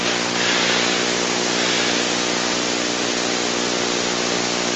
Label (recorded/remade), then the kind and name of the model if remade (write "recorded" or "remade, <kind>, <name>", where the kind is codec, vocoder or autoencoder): recorded